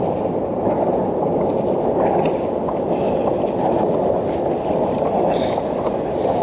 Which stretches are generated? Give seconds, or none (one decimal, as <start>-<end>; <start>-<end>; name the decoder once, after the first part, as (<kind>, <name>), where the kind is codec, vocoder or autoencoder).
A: none